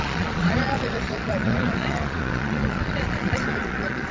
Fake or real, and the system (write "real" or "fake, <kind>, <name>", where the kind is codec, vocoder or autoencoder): fake, vocoder, Vocos